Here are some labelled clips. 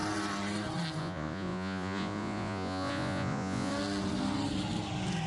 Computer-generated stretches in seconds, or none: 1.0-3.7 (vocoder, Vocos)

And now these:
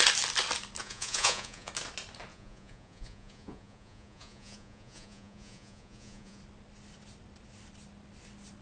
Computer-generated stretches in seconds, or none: 0.8-1.7 (vocoder, Vocos); 2.3-6.4

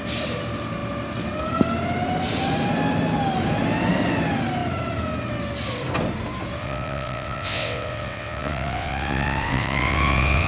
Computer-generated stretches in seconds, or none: 6.6-10.5 (vocoder, WaveNeXt)

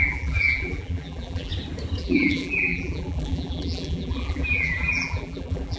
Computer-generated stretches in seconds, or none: 0.0-1.5 (vocoder, BigVGAN v2); 2.0-5.8